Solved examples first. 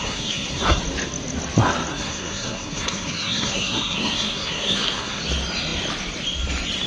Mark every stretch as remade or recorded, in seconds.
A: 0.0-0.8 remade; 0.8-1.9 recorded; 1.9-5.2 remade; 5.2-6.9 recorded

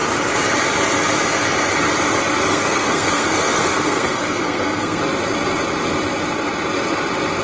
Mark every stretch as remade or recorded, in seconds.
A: 0.0-2.5 recorded; 2.5-5.0 remade; 5.0-7.4 recorded

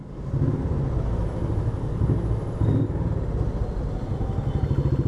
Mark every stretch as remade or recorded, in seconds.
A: 0.0-5.1 recorded

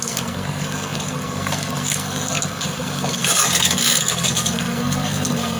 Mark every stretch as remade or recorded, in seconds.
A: 0.0-5.6 remade

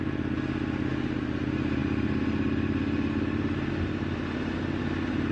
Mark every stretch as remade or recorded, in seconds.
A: 0.0-5.3 recorded

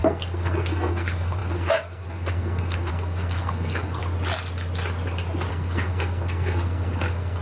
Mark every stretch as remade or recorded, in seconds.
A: 0.0-4.0 remade; 4.0-5.5 recorded; 5.5-7.4 remade